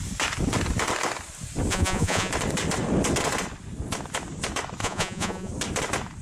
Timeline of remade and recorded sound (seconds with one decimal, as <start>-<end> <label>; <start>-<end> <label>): 0.0-1.7 recorded; 1.7-2.3 remade; 2.3-4.8 recorded; 4.8-5.5 remade; 5.5-6.2 recorded